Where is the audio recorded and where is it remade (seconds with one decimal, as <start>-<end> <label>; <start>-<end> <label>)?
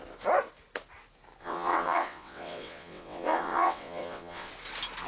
0.0-1.4 recorded; 1.4-4.5 remade; 4.5-5.1 recorded